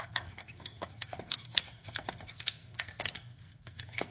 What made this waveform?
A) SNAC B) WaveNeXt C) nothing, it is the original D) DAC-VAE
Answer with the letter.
A